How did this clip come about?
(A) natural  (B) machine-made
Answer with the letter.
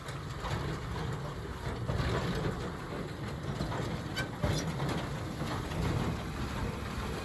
A